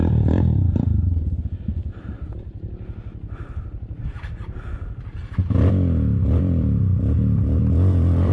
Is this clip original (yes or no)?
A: no